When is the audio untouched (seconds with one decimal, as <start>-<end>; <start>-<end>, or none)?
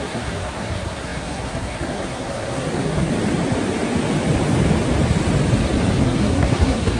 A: 3.1-6.0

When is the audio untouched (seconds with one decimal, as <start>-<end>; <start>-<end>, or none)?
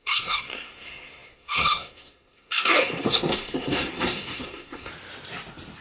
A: 4.9-5.8